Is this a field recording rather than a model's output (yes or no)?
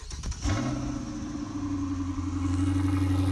yes